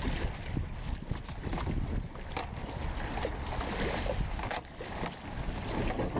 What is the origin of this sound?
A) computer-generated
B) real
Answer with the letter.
B